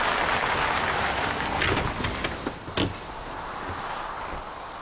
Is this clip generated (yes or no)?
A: no